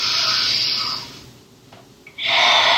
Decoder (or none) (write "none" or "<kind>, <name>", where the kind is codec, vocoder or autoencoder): none